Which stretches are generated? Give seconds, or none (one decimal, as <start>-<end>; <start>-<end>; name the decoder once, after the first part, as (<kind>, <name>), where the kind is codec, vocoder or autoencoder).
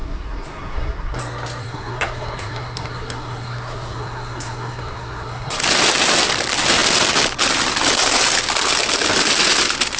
0.0-1.2 (codec, SNAC); 1.6-5.6